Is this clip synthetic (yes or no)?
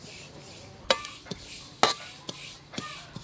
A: no